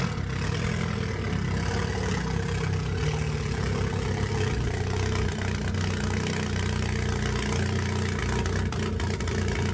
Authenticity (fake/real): real